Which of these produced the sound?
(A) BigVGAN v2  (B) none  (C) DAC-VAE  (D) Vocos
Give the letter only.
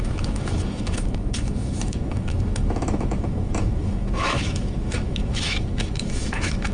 C